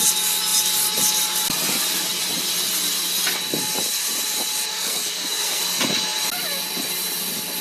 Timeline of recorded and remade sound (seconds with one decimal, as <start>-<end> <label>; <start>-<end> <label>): 0.0-4.7 recorded; 4.7-5.6 remade; 5.6-7.6 recorded